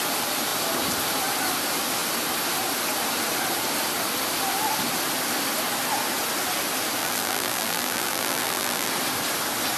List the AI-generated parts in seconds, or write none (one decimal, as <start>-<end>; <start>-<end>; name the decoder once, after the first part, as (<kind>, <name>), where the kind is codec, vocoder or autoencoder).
7.0-8.9 (vocoder, BigVGAN v2)